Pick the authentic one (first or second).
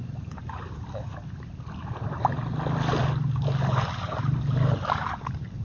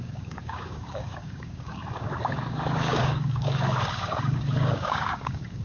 first